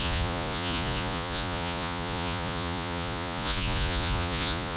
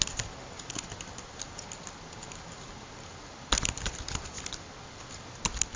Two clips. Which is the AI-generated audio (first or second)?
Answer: first